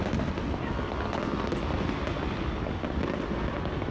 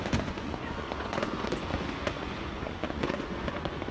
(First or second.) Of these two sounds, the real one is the first